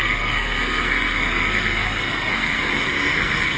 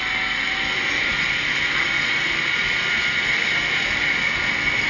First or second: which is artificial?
first